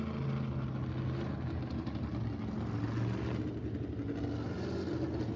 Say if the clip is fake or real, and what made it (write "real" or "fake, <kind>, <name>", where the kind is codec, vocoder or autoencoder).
real